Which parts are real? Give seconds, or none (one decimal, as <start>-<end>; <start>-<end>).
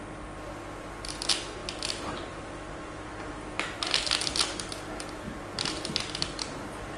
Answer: 0.0-7.0